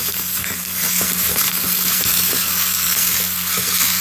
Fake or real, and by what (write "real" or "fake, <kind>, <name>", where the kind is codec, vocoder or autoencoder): fake, codec, SNAC